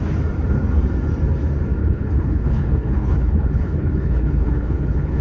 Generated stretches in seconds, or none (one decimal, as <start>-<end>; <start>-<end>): 1.8-5.2